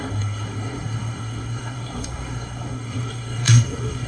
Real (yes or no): no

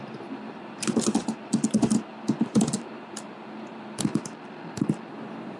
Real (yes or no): no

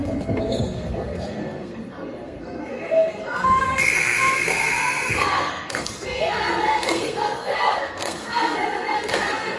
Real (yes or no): no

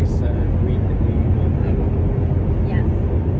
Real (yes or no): yes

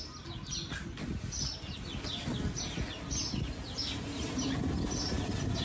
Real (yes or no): yes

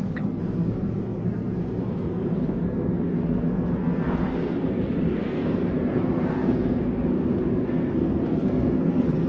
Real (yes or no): no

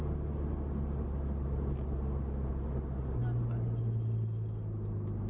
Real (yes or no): yes